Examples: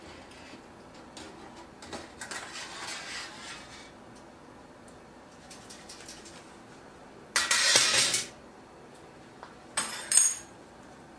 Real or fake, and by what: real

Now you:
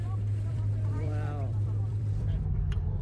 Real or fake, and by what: fake, vocoder, BigVGAN v2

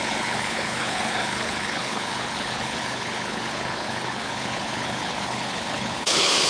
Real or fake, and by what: fake, codec, HILCodec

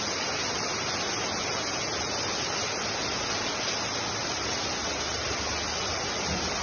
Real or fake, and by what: real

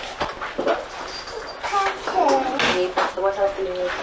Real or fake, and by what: real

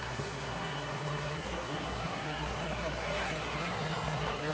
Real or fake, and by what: fake, codec, SNAC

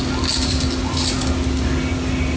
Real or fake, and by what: real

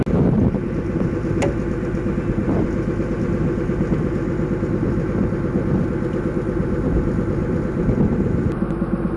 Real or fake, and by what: real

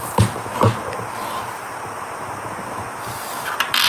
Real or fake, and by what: real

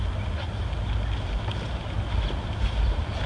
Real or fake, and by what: real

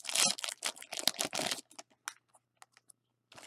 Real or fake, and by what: real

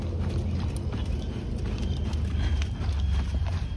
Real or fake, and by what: real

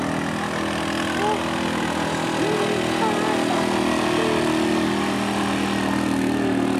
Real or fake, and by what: real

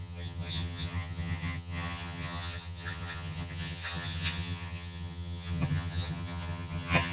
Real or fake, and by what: fake, vocoder, HiFi-GAN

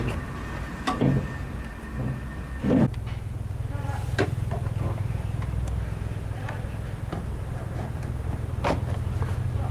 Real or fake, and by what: real